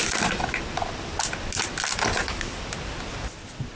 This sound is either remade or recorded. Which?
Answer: recorded